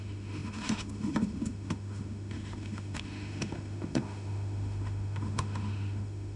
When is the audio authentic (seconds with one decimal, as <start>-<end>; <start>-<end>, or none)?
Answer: none